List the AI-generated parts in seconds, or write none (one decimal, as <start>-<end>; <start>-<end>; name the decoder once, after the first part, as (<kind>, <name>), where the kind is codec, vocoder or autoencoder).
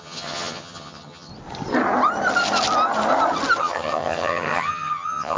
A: 0.0-1.3 (vocoder, HiFi-GAN); 3.6-5.4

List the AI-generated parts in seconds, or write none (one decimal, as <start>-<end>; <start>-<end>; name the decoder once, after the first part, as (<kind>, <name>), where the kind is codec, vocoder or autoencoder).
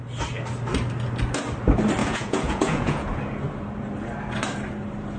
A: 2.0-3.2 (vocoder, Vocos)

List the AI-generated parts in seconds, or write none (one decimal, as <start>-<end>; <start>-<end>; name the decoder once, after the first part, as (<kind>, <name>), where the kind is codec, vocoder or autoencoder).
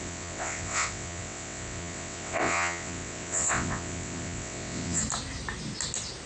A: 0.0-5.0 (vocoder, WaveNeXt)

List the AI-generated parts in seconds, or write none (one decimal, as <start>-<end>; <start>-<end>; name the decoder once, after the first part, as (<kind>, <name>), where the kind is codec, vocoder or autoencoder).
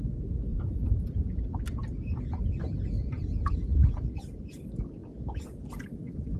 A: 0.5-1.4 (vocoder, Vocos)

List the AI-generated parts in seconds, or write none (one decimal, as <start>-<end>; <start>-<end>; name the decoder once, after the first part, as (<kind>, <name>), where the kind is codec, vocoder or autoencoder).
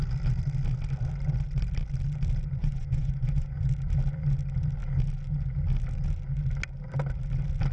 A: 2.6-3.7 (vocoder, Vocos)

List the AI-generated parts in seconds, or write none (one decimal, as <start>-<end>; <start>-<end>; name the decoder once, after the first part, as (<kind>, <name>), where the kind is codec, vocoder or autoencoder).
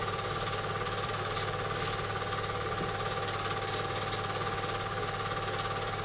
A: 0.0-1.1 (vocoder, BigVGAN v2)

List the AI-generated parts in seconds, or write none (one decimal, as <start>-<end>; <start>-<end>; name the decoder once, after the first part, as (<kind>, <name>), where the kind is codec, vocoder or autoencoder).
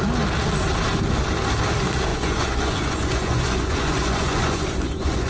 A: 2.1-5.3 (vocoder, Vocos)